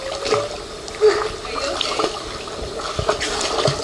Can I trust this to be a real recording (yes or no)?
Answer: yes